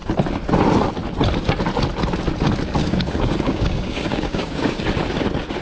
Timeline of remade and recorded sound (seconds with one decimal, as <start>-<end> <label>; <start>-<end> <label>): 0.0-2.8 recorded; 2.8-4.8 remade; 4.8-5.6 recorded